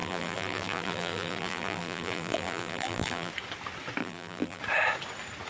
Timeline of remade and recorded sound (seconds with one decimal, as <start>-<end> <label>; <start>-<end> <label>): 0.0-3.3 remade; 3.3-4.0 recorded; 4.0-4.6 remade; 4.6-5.5 recorded